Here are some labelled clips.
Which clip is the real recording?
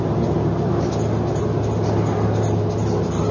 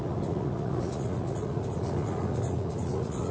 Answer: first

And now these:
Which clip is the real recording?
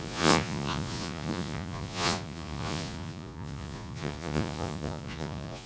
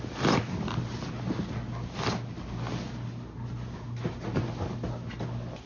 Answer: second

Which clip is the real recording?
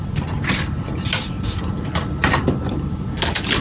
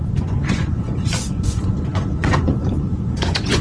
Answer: first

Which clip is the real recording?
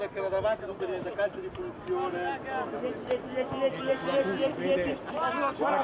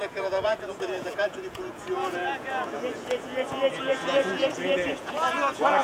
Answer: first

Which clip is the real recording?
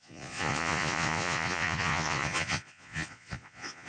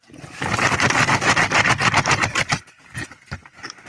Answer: second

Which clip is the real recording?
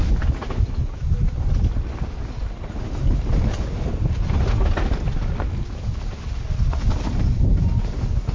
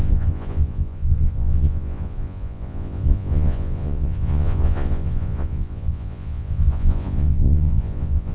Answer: first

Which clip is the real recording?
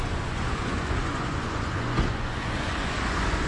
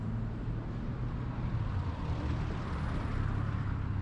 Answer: second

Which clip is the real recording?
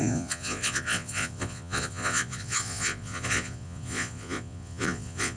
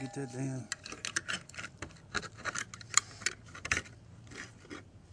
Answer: second